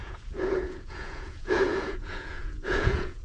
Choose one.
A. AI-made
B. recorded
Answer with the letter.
A